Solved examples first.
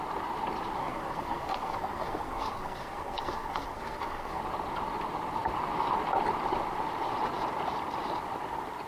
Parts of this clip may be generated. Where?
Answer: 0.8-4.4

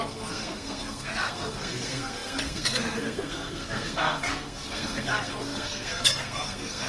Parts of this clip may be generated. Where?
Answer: 0.0-6.9

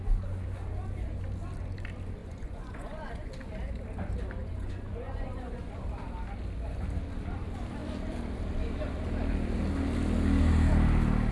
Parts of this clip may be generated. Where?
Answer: 2.2-3.3; 4.4-5.7

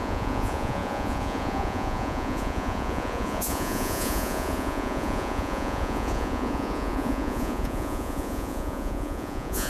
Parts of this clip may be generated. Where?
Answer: 0.0-9.7